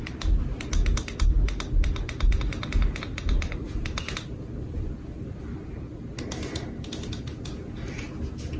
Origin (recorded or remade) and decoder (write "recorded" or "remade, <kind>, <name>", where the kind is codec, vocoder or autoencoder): recorded